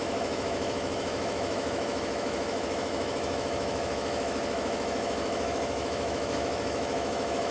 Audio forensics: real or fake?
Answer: fake